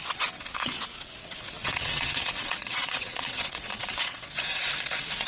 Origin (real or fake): fake